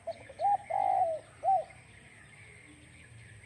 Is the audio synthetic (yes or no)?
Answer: no